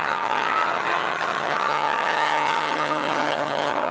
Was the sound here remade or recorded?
remade